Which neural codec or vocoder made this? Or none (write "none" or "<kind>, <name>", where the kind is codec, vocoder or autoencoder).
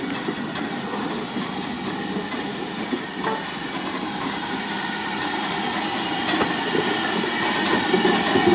none